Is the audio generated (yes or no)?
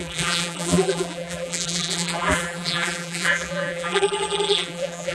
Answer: yes